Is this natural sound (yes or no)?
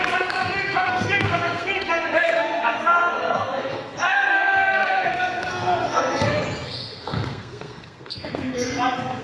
no